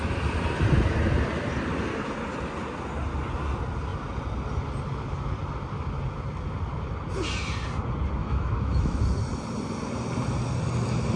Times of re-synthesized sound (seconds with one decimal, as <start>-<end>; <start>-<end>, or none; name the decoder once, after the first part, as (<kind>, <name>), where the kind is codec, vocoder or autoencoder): 8.2-9.0 (autoencoder, DAC-VAE)